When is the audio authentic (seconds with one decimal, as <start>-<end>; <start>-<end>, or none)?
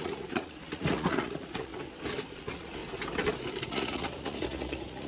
1.7-2.3; 2.8-3.7